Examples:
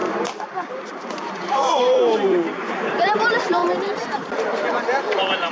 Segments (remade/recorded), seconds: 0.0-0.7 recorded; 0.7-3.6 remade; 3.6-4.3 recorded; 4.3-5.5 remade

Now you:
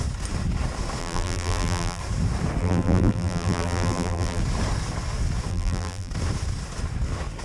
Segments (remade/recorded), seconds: 0.0-1.0 recorded; 1.0-2.0 remade; 2.0-2.6 recorded; 2.6-4.4 remade; 4.4-5.5 recorded; 5.5-6.1 remade; 6.1-7.4 recorded

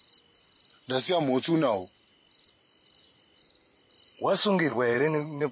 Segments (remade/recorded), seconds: 0.0-4.7 recorded; 4.7-5.5 remade

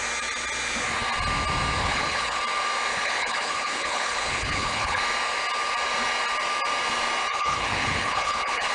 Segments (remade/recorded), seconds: 0.0-1.8 recorded; 1.8-2.4 remade; 2.4-2.9 recorded; 2.9-5.0 remade; 5.0-7.3 recorded; 7.3-8.7 remade